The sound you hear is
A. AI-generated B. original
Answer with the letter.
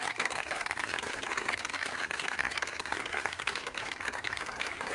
A